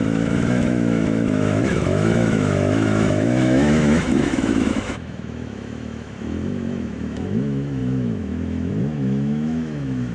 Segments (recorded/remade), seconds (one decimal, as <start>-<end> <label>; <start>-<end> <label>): 0.0-10.1 remade